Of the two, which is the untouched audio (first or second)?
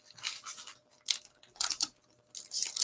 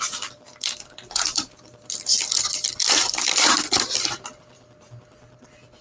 first